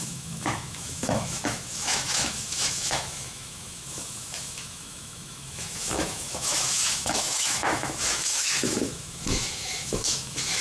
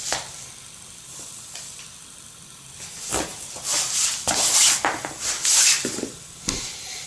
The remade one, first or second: first